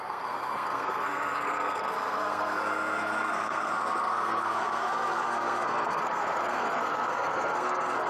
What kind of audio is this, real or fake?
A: fake